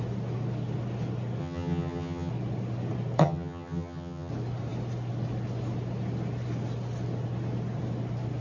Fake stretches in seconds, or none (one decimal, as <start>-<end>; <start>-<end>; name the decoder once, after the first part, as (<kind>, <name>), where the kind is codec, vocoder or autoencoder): 1.4-2.3 (vocoder, HiFi-GAN); 3.2-4.3